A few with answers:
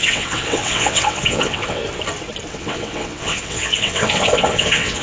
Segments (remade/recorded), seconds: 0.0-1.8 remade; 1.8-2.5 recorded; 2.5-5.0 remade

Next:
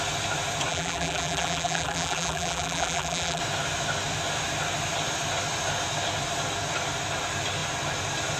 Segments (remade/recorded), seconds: 0.0-0.7 recorded; 0.7-3.4 remade; 3.4-8.4 recorded

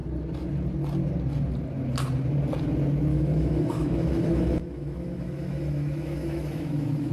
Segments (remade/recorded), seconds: 0.0-3.1 recorded; 3.1-7.1 remade

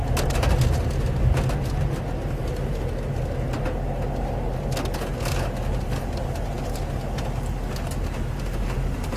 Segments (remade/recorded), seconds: 0.0-9.2 recorded

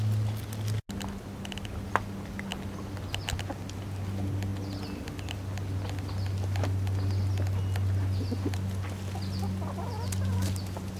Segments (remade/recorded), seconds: 0.0-11.0 recorded

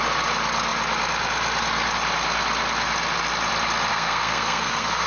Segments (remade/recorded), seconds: 0.0-3.9 recorded; 3.9-5.1 remade

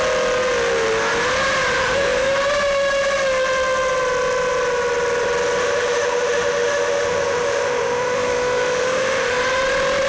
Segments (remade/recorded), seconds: 0.0-1.8 recorded; 1.8-2.3 remade; 2.3-5.6 recorded; 5.6-9.4 remade; 9.4-10.1 recorded